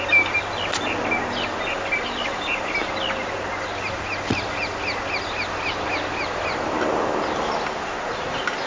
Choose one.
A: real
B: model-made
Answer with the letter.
A